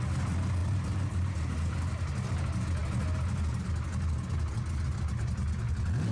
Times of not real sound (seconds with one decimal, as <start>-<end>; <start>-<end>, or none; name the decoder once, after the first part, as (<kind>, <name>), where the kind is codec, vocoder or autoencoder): 0.6-1.3 (vocoder, BigVGAN v2)